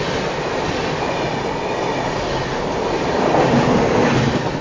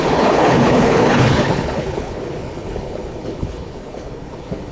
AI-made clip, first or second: second